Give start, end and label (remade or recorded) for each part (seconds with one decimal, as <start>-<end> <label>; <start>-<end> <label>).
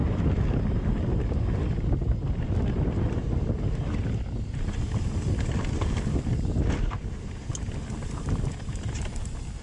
0.0-9.6 recorded